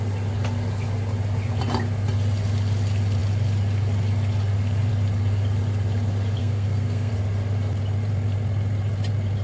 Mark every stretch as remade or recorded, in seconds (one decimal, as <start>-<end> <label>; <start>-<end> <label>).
0.0-6.4 recorded; 6.4-7.1 remade; 7.1-9.4 recorded